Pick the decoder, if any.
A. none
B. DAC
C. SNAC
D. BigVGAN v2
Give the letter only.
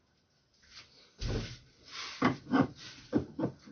A